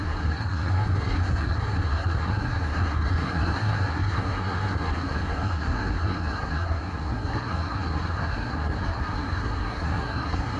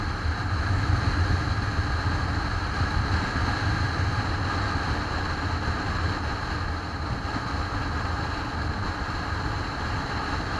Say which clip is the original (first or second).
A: second